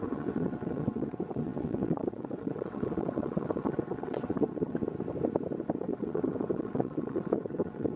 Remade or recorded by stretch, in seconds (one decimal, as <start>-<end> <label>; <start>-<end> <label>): 0.0-4.8 remade; 4.8-5.8 recorded; 5.8-8.0 remade